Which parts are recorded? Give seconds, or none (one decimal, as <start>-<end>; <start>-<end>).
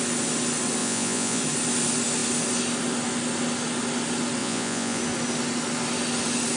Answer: 0.0-0.8; 1.4-4.4; 5.0-6.6